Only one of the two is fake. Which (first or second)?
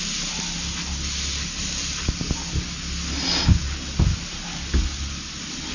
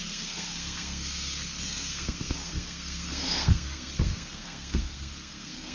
second